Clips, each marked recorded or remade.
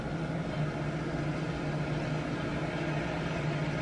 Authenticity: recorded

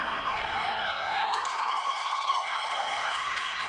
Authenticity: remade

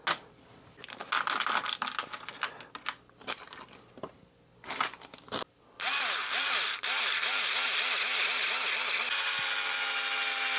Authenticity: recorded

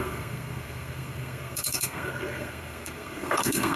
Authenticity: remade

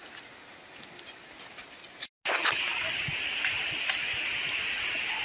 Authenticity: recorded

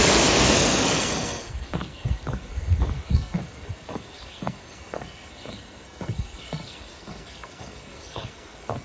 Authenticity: remade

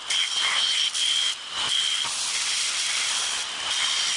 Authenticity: recorded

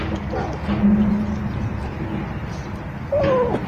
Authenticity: recorded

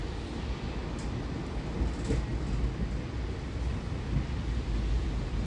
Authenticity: recorded